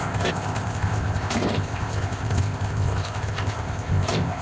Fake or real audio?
fake